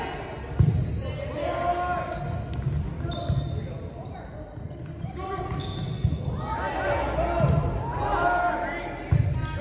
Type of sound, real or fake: real